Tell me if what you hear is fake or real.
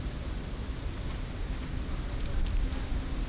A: real